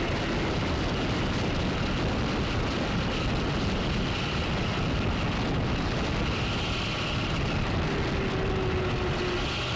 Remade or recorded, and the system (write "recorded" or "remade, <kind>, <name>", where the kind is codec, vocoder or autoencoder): recorded